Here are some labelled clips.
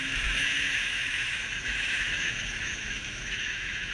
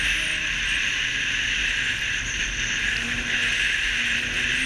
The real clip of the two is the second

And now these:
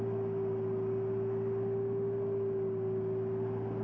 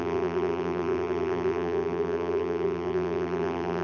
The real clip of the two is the first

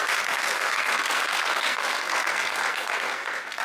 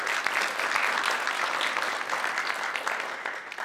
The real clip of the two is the second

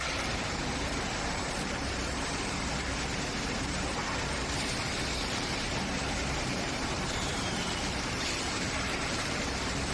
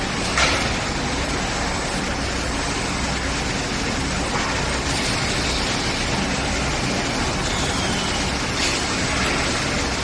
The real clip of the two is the second